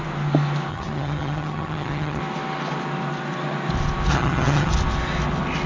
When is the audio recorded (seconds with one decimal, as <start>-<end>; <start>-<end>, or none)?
0.0-0.7; 2.2-4.1; 4.7-5.7